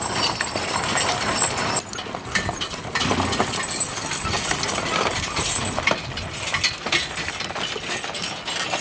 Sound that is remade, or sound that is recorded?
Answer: recorded